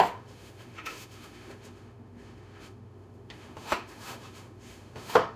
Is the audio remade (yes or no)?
yes